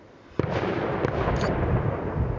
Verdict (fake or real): real